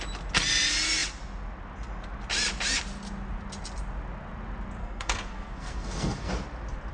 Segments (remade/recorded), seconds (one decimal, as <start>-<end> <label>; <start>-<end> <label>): 0.0-4.8 recorded; 4.8-6.3 remade; 6.3-6.9 recorded